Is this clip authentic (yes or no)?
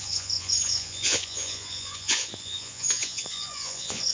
no